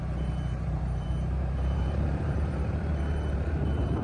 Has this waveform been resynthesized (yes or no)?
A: yes